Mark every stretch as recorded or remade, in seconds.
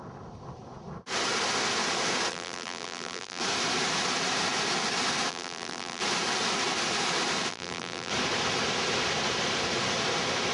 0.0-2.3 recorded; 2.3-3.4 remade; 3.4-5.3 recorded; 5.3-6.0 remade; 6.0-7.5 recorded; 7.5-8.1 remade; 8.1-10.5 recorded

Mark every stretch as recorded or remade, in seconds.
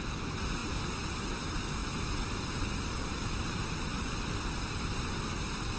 0.0-5.8 recorded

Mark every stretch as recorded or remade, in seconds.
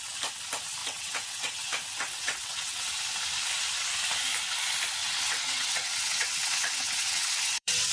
0.0-0.8 recorded; 0.8-2.9 remade; 2.9-5.0 recorded; 5.0-7.9 remade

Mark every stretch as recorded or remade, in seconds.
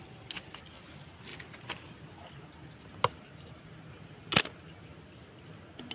0.0-5.9 recorded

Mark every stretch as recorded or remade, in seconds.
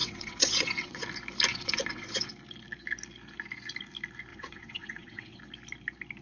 0.0-1.0 remade; 1.0-1.5 recorded; 1.5-2.3 remade; 2.3-4.3 recorded; 4.3-5.4 remade; 5.4-6.2 recorded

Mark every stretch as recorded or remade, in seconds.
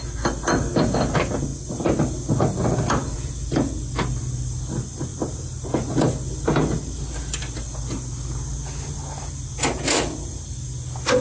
0.0-11.2 recorded